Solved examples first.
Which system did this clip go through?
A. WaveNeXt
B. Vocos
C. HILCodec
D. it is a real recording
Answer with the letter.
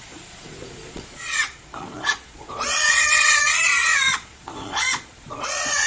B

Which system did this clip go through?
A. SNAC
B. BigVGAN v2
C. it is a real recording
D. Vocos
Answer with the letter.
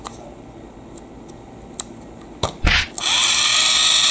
C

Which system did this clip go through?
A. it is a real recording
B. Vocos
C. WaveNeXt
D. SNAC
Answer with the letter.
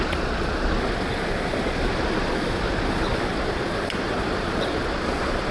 B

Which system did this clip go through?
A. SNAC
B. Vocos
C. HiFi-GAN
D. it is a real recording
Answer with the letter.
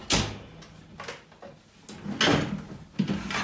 D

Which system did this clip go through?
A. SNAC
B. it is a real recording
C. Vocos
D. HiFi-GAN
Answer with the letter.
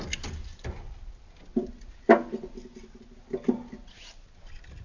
B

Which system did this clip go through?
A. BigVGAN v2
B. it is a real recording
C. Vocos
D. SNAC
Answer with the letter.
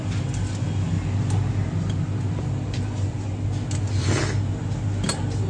B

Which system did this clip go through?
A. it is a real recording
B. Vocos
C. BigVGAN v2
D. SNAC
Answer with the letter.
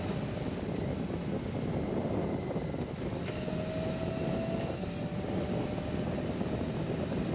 A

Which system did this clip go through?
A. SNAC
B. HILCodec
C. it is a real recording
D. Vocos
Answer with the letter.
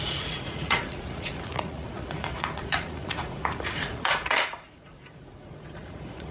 D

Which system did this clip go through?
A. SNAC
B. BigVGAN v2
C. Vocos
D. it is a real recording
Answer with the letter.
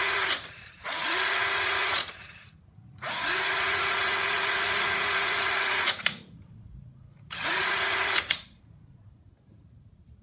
C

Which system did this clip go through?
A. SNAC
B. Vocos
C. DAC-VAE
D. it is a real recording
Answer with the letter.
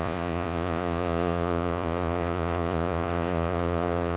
B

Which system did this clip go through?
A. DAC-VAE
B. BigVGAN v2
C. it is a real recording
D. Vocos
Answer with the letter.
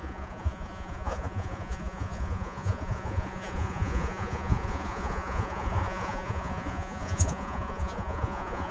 D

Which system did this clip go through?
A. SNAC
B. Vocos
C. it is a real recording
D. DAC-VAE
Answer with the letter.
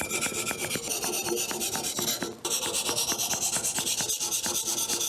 C